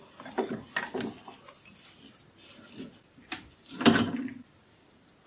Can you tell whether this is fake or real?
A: real